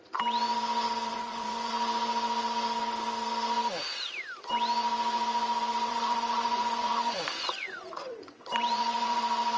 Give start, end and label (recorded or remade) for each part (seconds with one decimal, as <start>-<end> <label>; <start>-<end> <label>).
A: 0.0-1.1 recorded; 1.1-1.7 remade; 1.7-5.9 recorded; 5.9-9.2 remade; 9.2-9.6 recorded